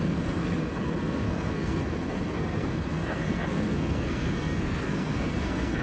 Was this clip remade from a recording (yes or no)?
yes